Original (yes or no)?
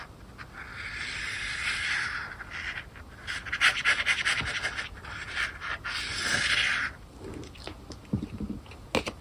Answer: yes